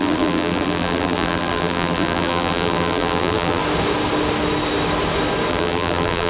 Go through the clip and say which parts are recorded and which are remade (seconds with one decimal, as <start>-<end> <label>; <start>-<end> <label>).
0.0-3.6 remade; 3.6-5.5 recorded; 5.5-6.3 remade